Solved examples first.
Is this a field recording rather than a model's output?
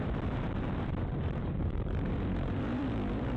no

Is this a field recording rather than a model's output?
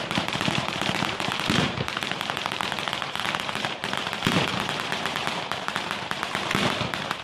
no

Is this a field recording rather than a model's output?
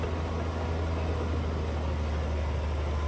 yes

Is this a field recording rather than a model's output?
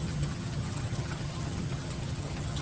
no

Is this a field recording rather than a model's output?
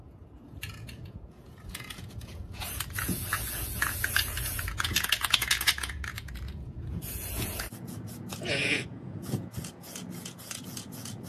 no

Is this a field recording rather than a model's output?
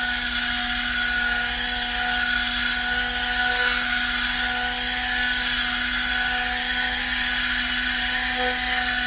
yes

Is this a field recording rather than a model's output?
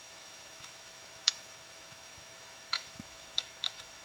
no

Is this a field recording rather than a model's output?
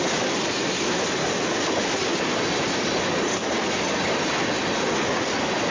yes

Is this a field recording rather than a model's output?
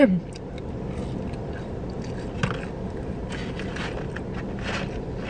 yes